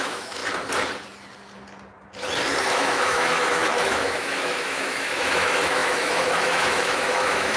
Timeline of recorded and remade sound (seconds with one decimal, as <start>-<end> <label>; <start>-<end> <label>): 0.0-0.4 remade; 0.4-2.6 recorded; 2.6-7.6 remade